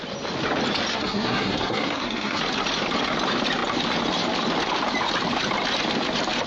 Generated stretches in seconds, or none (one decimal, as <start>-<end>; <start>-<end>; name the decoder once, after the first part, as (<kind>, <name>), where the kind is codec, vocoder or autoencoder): 0.9-2.4 (codec, SNAC)